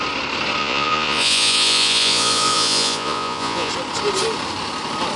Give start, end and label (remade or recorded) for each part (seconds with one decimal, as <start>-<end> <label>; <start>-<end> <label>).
0.0-0.6 recorded; 0.6-3.7 remade; 3.7-5.2 recorded